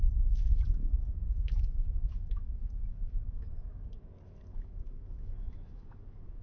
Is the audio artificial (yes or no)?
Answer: yes